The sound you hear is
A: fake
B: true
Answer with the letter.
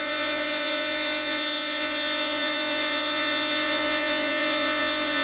A